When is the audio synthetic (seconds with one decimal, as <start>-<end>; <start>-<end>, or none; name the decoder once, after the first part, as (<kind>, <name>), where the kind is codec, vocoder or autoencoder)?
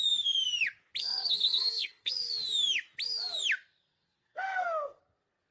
1.0-2.1 (codec, SNAC); 3.9-5.0